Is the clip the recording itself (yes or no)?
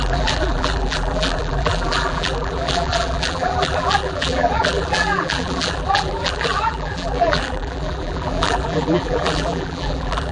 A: no